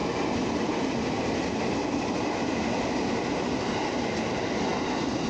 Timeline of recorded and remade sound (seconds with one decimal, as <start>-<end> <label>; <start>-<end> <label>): 0.0-5.3 recorded